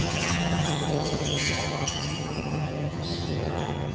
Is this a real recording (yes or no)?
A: no